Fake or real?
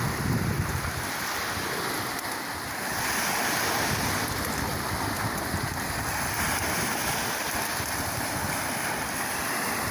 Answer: real